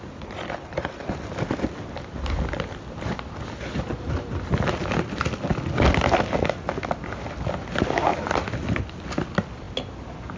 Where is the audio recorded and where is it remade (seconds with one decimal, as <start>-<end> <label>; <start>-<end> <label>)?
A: 0.0-10.4 recorded